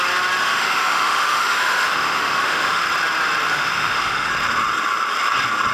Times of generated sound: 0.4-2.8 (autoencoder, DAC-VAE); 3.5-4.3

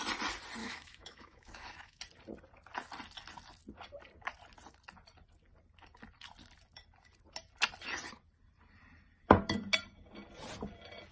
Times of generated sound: 0.6-2.0 (autoencoder, DAC-VAE)

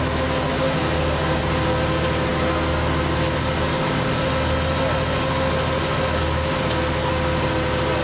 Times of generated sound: 0.8-1.4 (codec, DAC)

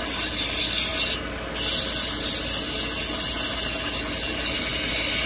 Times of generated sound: none

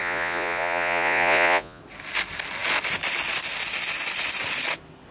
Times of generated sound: 0.0-1.8 (vocoder, Vocos)

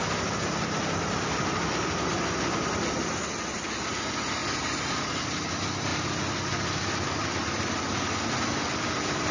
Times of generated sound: none

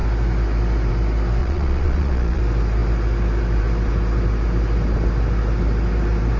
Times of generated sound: 1.4-2.4 (vocoder, Vocos)